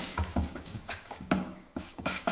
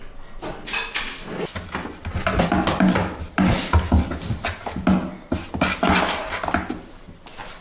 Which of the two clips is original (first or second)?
second